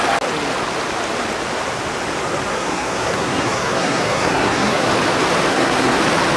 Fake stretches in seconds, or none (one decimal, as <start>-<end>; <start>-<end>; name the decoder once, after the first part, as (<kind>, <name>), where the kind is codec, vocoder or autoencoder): 2.5-4.9 (codec, SNAC); 5.5-6.0